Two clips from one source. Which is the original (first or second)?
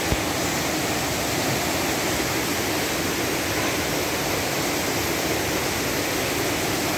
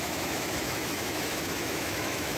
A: first